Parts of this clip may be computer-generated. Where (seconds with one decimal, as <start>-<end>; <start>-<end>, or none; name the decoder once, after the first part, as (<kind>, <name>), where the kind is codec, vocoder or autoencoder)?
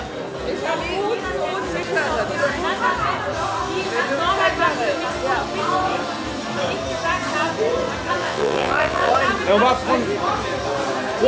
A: 8.2-9.1 (vocoder, WaveNeXt)